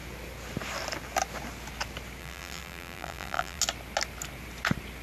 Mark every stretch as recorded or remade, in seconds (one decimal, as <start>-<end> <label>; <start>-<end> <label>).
0.0-2.2 recorded; 2.2-3.6 remade; 3.6-5.0 recorded